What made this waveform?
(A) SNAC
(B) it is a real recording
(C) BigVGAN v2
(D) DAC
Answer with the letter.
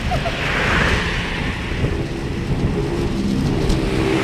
B